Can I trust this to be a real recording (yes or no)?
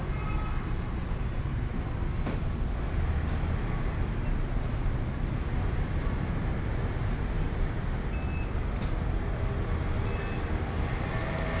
yes